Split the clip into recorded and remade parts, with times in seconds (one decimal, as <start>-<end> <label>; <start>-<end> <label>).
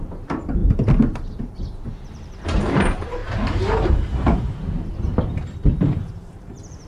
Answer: 0.0-6.9 remade